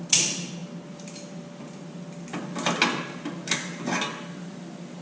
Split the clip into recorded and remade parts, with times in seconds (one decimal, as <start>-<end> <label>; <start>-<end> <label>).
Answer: 0.0-5.0 recorded